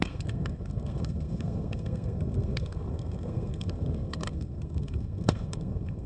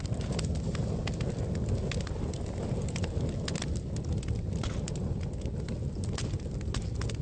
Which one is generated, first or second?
first